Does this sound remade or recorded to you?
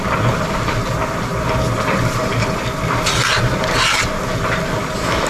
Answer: recorded